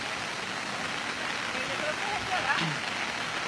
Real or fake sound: real